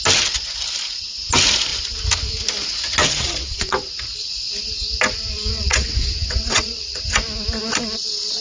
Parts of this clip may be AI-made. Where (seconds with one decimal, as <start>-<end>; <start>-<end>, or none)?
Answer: 3.0-3.9; 5.5-7.0